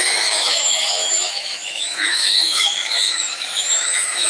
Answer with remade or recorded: remade